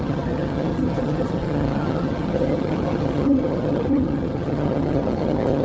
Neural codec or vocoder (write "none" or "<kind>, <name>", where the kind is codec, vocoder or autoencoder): vocoder, HiFi-GAN